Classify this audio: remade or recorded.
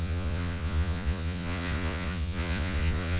remade